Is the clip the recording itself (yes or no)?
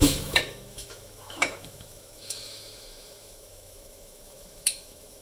no